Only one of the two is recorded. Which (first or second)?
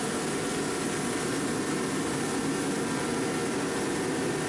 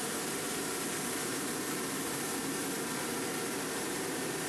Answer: first